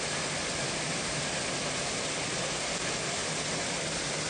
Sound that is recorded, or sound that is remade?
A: recorded